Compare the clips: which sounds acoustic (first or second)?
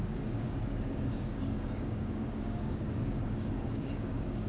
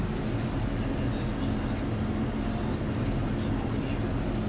second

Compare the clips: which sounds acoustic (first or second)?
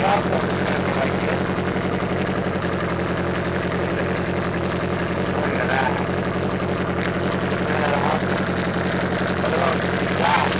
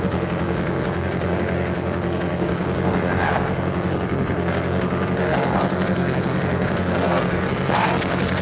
first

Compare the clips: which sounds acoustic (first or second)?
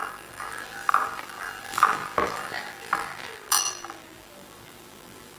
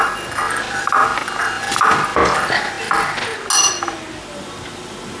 second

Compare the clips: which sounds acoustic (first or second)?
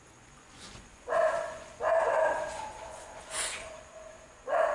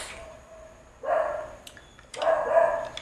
second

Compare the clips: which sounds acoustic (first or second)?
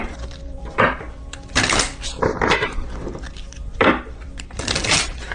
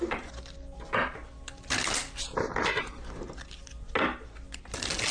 second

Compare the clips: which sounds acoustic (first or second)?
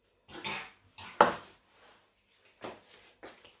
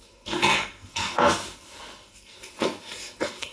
first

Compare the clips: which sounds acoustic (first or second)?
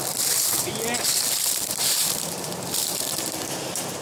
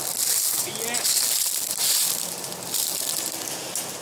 second